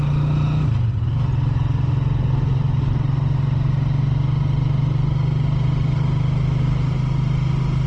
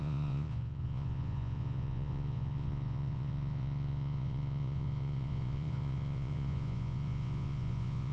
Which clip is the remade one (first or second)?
second